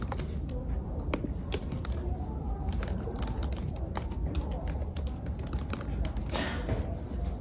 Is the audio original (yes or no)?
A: yes